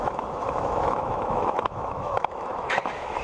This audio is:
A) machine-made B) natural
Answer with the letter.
A